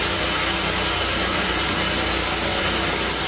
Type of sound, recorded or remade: recorded